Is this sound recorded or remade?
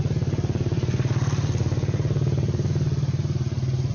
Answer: recorded